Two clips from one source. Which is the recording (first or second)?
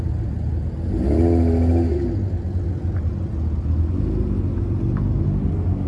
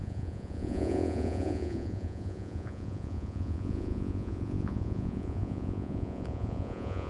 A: first